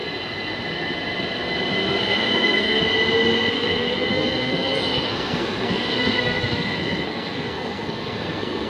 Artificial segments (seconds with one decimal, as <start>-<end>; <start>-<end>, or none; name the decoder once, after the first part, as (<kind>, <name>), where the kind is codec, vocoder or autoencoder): 2.0-2.8 (codec, SNAC); 3.5-8.7